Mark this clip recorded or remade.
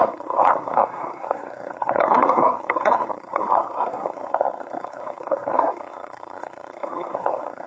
remade